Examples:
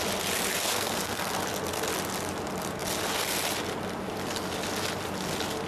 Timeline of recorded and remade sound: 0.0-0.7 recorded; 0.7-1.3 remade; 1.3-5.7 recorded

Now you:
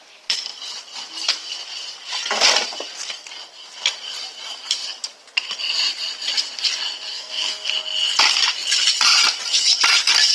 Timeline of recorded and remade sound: 0.0-7.1 recorded; 7.1-7.7 remade; 7.7-10.3 recorded

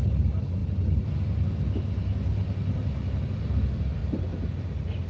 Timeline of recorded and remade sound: 0.0-5.1 recorded

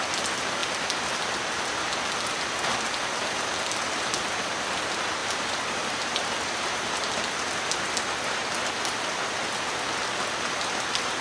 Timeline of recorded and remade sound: 0.0-5.2 recorded; 5.2-6.9 remade; 6.9-11.2 recorded